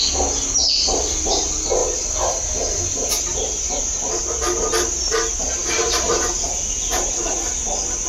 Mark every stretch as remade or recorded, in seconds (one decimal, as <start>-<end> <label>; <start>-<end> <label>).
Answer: 0.0-5.6 recorded; 5.6-6.3 remade; 6.3-8.1 recorded